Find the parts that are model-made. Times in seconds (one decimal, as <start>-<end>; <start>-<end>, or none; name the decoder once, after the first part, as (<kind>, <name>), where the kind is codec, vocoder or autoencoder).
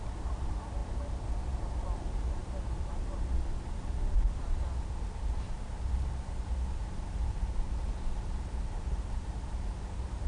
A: none